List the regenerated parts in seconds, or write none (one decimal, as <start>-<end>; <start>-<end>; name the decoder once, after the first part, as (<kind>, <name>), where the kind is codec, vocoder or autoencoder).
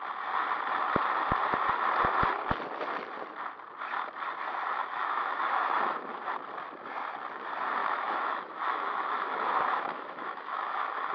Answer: 5.0-6.2 (autoencoder, DAC-VAE); 7.8-11.1